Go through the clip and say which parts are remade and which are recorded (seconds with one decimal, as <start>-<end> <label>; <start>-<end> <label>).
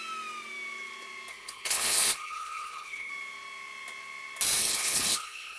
0.0-1.3 recorded; 1.3-3.1 remade; 3.1-4.6 recorded; 4.6-5.6 remade